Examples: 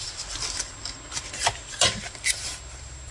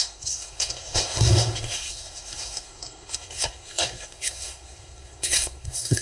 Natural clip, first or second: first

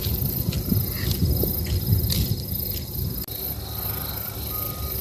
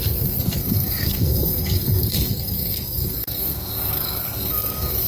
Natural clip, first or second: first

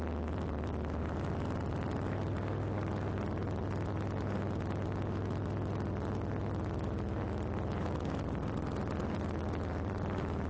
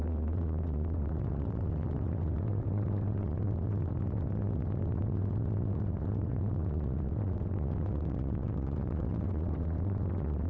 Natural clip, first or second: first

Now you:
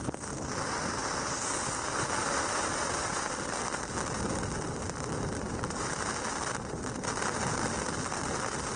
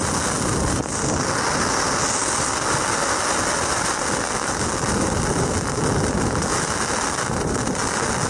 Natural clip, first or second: second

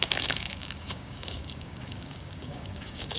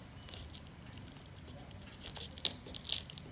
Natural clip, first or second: second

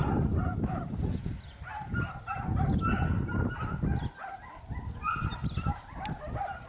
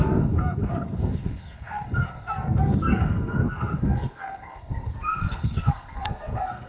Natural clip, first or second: first